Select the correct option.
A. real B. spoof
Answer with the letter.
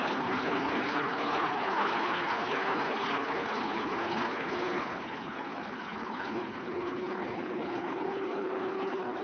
B